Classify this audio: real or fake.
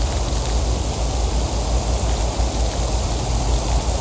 real